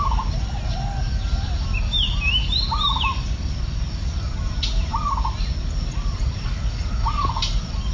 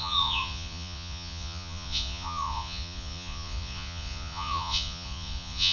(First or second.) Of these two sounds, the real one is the first